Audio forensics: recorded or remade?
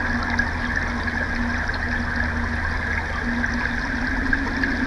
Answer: recorded